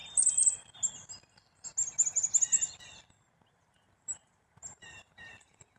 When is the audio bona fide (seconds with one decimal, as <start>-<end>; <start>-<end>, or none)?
0.0-3.5